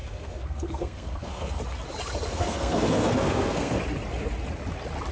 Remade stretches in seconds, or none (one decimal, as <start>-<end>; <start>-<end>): 0.0-1.6; 2.3-3.8